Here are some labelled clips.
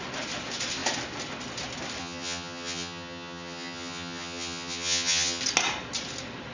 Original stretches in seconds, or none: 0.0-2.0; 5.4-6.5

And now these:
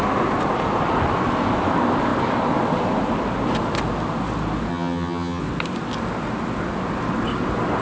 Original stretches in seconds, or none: 0.0-4.7; 5.4-7.8

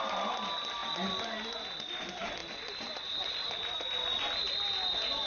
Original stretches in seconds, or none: 0.0-5.3